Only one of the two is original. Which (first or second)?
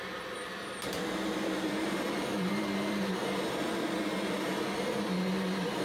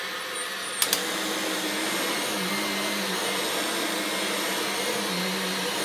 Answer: second